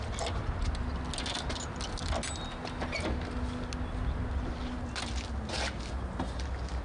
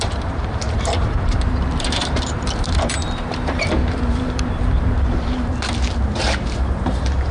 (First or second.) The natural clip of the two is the first